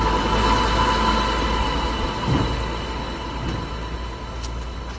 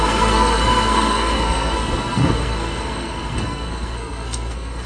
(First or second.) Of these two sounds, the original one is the first